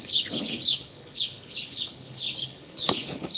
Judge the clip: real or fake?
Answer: fake